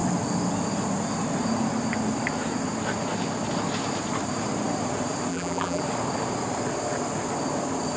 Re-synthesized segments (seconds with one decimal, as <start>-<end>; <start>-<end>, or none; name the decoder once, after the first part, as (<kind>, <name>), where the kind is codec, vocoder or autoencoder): 5.3-5.8 (vocoder, BigVGAN v2)